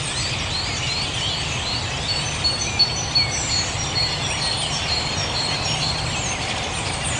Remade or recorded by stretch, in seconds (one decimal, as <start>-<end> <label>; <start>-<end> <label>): 0.0-7.2 recorded

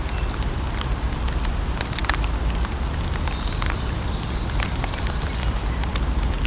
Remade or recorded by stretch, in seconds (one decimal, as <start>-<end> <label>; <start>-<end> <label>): 0.0-6.5 recorded

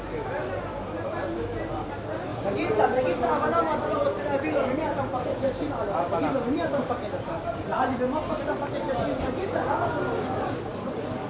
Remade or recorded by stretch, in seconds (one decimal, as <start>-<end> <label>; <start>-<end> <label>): 0.0-11.3 recorded

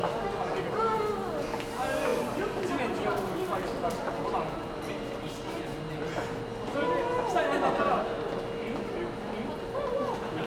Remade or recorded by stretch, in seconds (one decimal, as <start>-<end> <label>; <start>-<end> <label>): 0.0-10.5 recorded

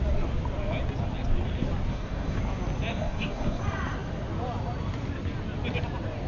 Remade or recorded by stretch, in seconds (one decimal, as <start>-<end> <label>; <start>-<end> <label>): 0.0-1.9 recorded; 1.9-2.4 remade; 2.4-2.9 recorded; 2.9-3.6 remade; 3.6-6.3 recorded

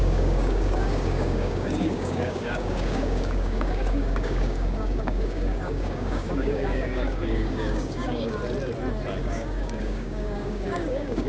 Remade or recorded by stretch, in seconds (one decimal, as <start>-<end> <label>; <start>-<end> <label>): 0.0-8.4 remade; 8.4-9.2 recorded; 9.2-11.3 remade